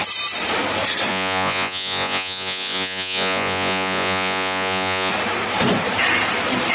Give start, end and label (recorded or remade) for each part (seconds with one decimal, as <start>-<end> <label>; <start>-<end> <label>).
0.0-1.1 recorded; 1.1-5.1 remade; 5.1-6.7 recorded